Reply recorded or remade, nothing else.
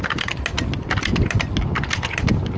recorded